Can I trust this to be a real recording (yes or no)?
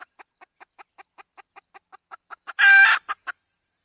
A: yes